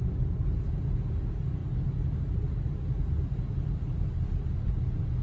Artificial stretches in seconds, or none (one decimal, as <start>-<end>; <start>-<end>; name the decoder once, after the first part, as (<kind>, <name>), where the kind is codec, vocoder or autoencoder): none